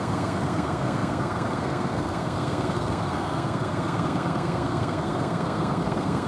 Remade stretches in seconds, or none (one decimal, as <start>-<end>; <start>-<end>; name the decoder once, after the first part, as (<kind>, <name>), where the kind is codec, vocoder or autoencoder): 0.0-6.3 (codec, SNAC)